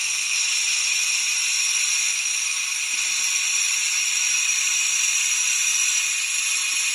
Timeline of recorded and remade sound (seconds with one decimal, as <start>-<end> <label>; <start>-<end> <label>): 0.0-5.7 remade; 5.7-6.9 recorded